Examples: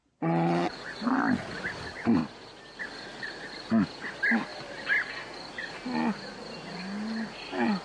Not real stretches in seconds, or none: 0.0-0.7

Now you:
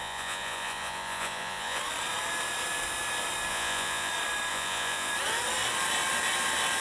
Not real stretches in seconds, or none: 0.0-1.8; 3.5-4.1; 4.5-5.1

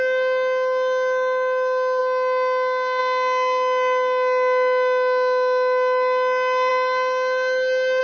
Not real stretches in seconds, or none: none

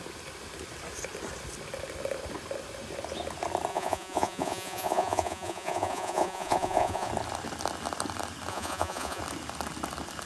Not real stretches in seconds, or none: 3.7-7.1; 8.5-9.2

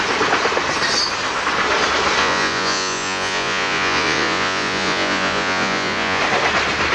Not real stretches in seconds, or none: 2.2-6.2

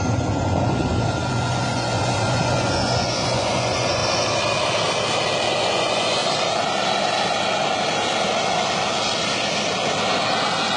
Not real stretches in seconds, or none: 0.0-4.0; 5.5-6.2

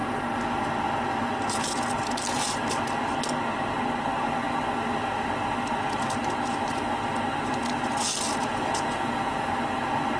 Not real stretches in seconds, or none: 8.5-9.5

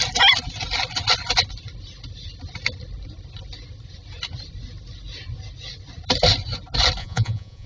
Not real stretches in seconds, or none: 7.0-7.7